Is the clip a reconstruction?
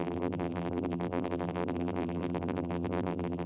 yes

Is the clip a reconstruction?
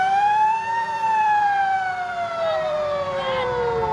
yes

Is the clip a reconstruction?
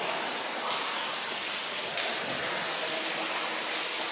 yes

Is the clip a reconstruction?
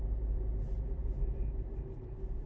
yes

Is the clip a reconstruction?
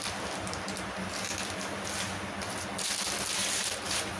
no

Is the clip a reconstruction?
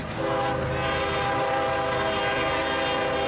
no